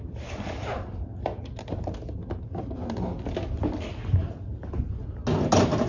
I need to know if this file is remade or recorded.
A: recorded